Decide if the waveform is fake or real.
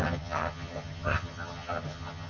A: fake